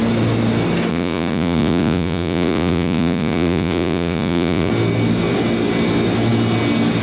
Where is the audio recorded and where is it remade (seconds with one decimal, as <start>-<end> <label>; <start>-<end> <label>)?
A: 0.0-0.9 recorded; 0.9-4.7 remade; 4.7-7.0 recorded